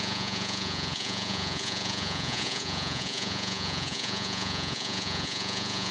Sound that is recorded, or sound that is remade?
remade